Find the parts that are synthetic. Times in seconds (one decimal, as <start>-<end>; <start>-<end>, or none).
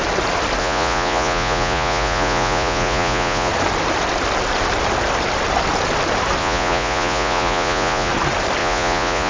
0.6-3.5; 6.4-8.1; 8.6-9.3